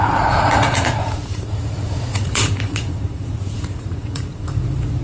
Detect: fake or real fake